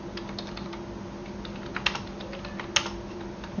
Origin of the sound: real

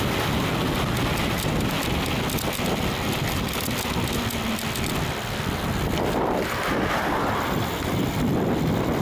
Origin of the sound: real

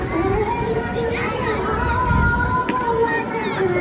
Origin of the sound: real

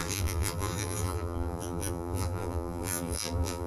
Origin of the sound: fake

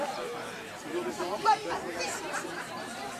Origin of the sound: fake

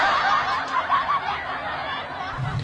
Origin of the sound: real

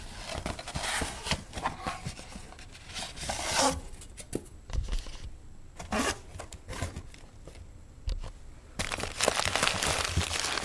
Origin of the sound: real